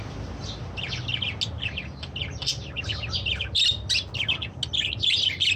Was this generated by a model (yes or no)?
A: no